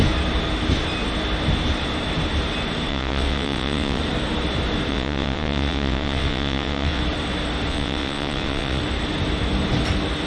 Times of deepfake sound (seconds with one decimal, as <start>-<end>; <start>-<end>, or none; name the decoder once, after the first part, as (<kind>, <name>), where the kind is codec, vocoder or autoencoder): 2.9-4.0 (vocoder, WaveNeXt); 4.9-7.0; 7.7-8.8